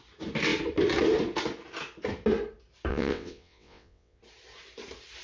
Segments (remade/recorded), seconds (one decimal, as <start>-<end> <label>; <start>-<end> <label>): 0.0-2.9 recorded; 2.9-4.2 remade; 4.2-5.2 recorded